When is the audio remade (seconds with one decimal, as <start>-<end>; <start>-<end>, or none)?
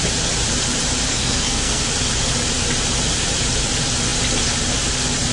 1.1-1.8